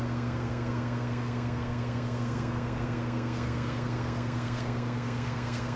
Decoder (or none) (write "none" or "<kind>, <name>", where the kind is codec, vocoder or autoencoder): codec, SNAC